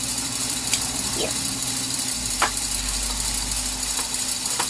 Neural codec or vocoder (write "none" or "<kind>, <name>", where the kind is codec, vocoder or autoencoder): vocoder, BigVGAN v2